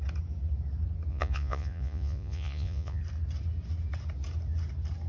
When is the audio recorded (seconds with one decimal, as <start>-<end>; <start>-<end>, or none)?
0.0-1.1; 3.0-5.1